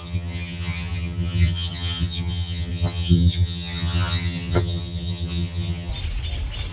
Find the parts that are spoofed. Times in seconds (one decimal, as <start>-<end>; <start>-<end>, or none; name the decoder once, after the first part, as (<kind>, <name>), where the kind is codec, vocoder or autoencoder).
0.0-5.9 (vocoder, HiFi-GAN)